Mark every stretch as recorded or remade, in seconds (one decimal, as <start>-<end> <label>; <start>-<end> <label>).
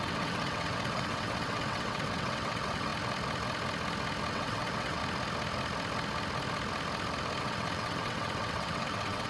0.0-2.9 remade; 2.9-4.3 recorded; 4.3-5.0 remade; 5.0-7.4 recorded; 7.4-9.3 remade